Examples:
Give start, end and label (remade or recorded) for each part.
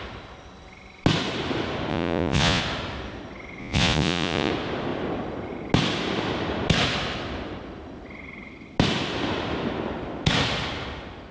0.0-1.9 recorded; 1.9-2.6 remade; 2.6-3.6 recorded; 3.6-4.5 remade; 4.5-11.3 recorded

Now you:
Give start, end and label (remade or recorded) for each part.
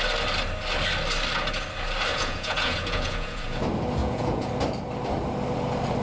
0.0-2.1 recorded; 2.1-3.6 remade; 3.6-4.0 recorded; 4.0-4.5 remade; 4.5-6.0 recorded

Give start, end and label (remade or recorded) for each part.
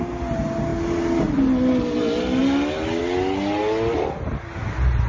0.0-5.1 recorded